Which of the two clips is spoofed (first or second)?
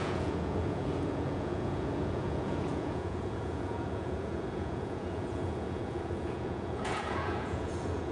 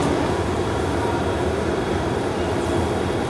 first